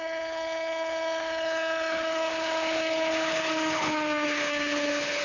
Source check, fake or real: fake